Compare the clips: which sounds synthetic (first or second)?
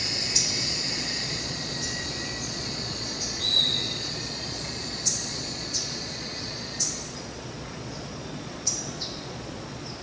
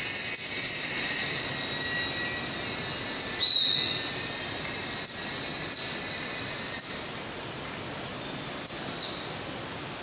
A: first